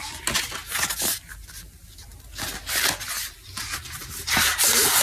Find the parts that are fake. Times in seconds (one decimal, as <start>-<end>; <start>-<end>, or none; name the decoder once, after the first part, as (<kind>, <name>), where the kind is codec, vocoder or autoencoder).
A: none